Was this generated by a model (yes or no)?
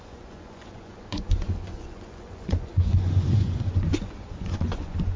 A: yes